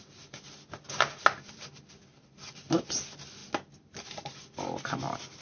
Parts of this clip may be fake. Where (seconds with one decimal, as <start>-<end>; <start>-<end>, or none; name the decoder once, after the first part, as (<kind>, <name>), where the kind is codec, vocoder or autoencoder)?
none